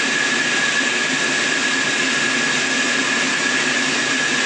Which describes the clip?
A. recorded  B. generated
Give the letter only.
A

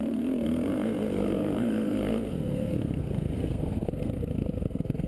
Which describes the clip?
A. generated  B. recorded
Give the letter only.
A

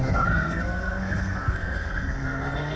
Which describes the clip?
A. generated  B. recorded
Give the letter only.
A